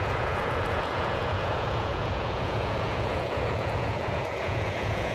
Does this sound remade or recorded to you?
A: remade